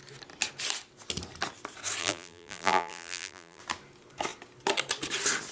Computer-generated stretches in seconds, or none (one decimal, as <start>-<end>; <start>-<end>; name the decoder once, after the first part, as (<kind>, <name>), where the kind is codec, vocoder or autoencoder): 2.0-3.6 (vocoder, BigVGAN v2)